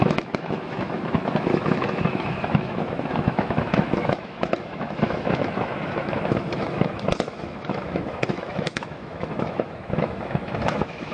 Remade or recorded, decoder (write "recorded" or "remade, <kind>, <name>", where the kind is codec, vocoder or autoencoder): remade, autoencoder, DAC-VAE